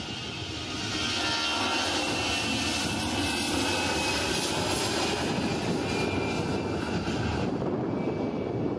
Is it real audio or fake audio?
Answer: real